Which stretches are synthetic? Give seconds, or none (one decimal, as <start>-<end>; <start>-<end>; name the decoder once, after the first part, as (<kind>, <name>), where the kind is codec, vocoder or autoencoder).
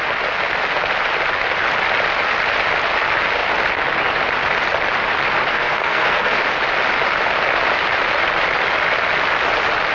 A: 5.5-6.4 (codec, SNAC)